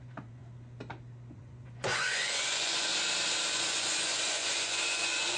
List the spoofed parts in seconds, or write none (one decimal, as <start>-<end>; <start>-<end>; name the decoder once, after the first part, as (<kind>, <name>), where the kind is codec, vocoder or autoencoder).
0.0-0.4 (vocoder, Vocos); 1.3-2.9; 3.5-5.4